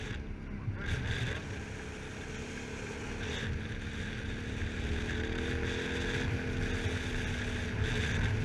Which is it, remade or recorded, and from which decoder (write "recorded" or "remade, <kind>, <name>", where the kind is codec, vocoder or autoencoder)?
recorded